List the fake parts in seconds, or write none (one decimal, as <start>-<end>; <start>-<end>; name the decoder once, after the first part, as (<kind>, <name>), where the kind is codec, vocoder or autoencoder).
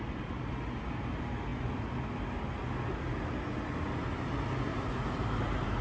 4.7-5.8 (vocoder, BigVGAN v2)